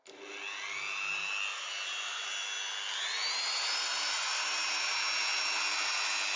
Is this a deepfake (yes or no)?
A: no